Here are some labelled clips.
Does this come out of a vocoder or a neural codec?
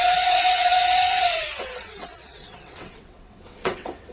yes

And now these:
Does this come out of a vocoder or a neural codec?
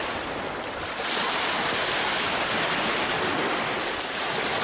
no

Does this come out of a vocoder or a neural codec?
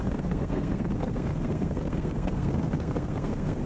yes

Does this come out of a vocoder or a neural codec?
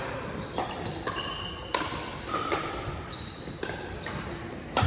no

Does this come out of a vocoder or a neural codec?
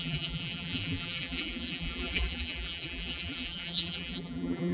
yes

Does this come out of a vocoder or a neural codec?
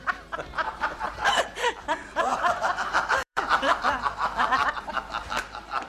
yes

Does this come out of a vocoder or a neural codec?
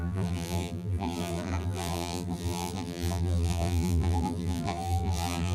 yes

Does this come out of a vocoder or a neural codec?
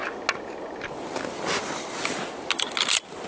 no